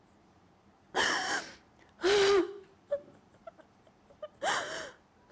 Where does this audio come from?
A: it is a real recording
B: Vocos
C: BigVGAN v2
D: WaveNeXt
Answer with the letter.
C